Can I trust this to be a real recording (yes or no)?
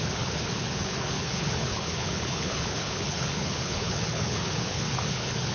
no